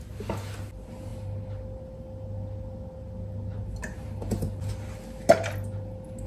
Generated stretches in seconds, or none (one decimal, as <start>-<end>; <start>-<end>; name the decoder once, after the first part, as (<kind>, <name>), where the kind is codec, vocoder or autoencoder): none